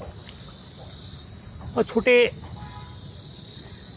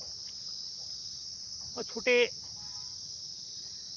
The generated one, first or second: second